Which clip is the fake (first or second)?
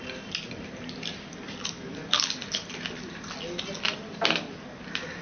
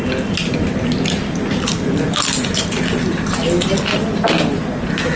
second